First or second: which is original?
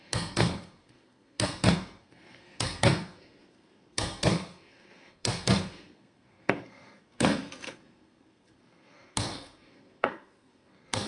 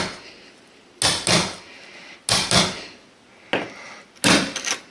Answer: second